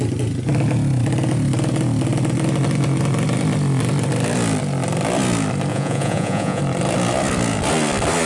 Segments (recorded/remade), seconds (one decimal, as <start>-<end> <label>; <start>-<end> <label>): 0.0-5.7 recorded; 5.7-6.6 remade; 6.6-8.3 recorded